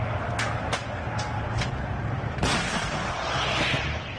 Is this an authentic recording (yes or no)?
yes